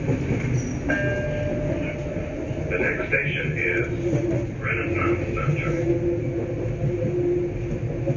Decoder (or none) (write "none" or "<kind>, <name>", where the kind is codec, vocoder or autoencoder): none